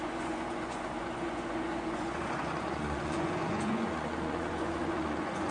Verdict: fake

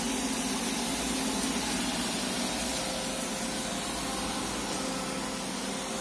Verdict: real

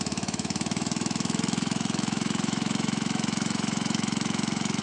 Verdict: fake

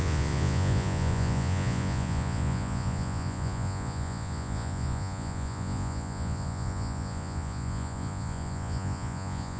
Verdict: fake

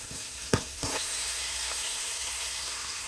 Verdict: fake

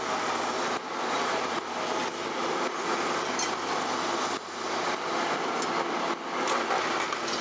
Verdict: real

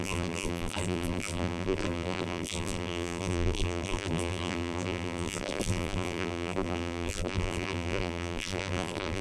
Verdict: fake